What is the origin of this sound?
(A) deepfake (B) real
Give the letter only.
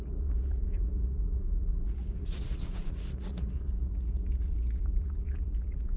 A